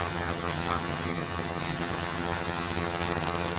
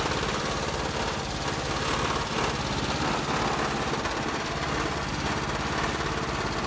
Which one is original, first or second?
second